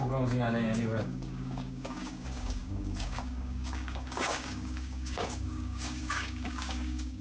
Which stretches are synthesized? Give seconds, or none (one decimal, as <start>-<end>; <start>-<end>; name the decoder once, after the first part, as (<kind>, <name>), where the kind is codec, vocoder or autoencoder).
0.0-7.2 (codec, DAC)